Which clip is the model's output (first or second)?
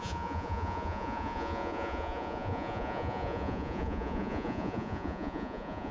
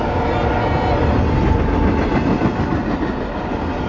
first